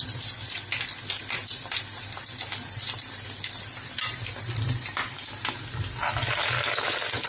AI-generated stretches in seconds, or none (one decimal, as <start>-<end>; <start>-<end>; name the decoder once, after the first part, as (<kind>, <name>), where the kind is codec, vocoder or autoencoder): none